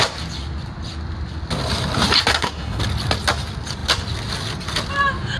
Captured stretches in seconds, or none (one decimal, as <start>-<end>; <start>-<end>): 0.0-2.3; 2.8-5.4